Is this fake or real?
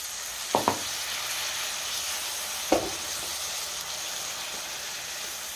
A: real